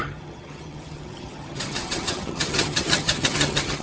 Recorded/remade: remade